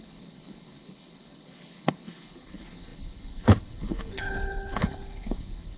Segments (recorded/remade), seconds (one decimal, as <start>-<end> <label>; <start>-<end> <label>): 0.0-5.8 remade